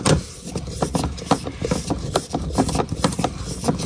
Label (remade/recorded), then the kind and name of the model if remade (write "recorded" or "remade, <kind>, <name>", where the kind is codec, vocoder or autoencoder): remade, vocoder, BigVGAN v2